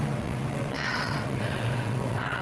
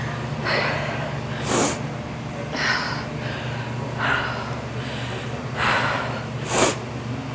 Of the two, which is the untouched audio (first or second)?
second